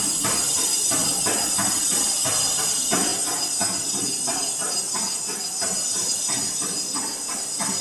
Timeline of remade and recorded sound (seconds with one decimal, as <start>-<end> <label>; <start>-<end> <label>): 0.0-1.0 remade; 1.0-1.5 recorded; 1.5-3.1 remade; 3.1-7.3 recorded; 7.3-7.8 remade